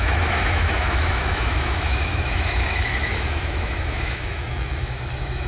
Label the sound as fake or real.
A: fake